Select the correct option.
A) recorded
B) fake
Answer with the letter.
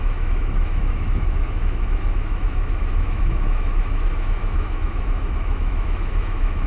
B